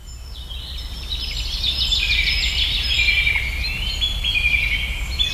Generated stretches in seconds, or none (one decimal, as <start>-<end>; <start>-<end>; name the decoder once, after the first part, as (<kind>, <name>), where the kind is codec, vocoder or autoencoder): none